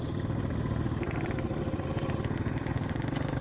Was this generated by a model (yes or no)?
no